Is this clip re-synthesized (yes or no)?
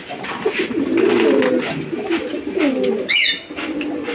no